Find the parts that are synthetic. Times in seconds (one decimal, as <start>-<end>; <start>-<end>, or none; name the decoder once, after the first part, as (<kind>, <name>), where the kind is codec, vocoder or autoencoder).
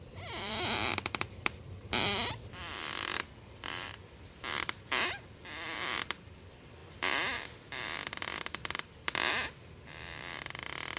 0.0-11.0 (vocoder, BigVGAN v2)